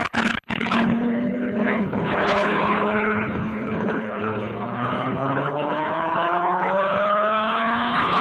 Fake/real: fake